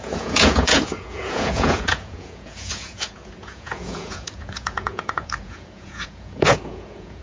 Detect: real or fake fake